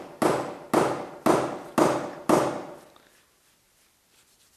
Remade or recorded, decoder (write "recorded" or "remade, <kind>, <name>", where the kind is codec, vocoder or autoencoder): recorded